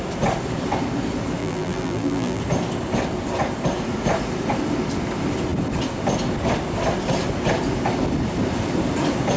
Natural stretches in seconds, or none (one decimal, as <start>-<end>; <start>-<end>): 0.0-1.4; 2.4-9.4